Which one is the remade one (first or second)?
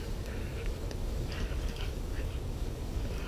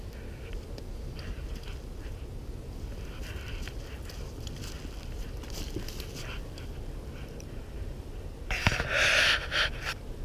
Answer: first